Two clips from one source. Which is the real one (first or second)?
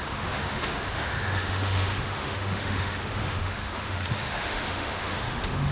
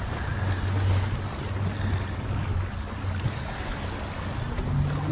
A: second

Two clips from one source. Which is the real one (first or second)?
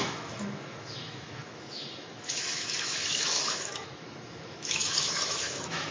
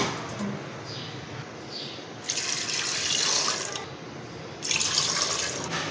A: second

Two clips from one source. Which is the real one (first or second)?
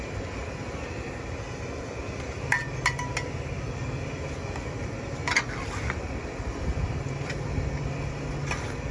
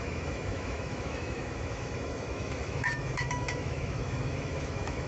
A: first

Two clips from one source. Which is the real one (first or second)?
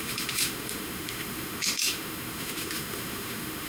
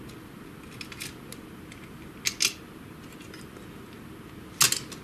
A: second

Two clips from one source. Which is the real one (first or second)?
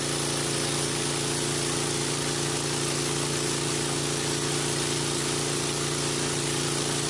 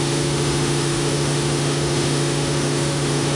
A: first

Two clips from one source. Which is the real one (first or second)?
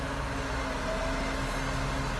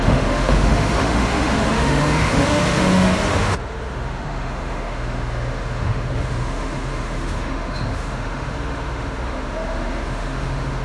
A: first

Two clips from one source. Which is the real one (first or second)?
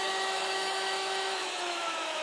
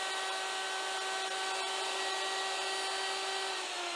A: second